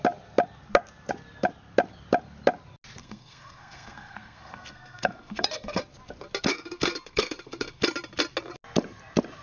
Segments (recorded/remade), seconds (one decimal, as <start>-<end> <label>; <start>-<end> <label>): 0.0-3.0 recorded; 3.0-5.8 remade; 5.8-6.5 recorded; 6.5-7.8 remade; 7.8-9.4 recorded